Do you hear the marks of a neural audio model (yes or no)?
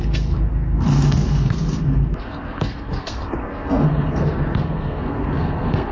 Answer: yes